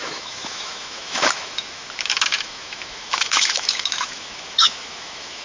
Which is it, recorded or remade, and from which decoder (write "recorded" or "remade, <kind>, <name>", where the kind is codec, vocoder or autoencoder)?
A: remade, autoencoder, DAC-VAE